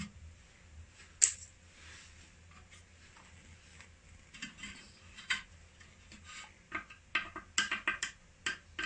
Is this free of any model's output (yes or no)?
yes